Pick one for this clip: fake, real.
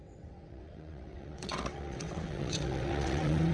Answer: fake